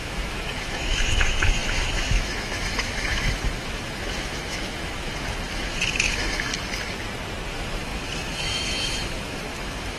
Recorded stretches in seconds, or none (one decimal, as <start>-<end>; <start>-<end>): 6.5-7.5